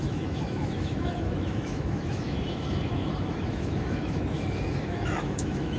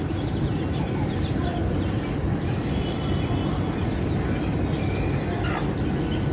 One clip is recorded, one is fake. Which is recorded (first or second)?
second